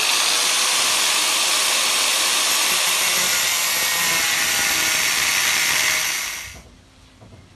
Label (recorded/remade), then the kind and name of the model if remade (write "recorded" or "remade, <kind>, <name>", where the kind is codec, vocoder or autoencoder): recorded